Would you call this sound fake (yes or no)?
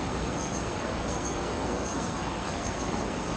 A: yes